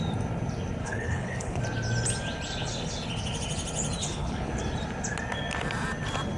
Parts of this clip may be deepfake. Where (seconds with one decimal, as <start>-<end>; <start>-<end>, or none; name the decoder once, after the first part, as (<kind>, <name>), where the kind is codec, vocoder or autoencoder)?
0.8-1.6 (codec, HILCodec); 4.0-4.5